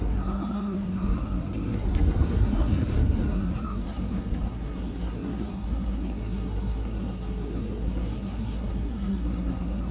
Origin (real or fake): fake